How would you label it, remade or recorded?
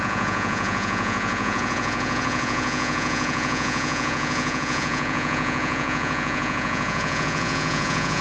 remade